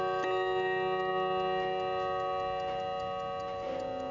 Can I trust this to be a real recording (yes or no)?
yes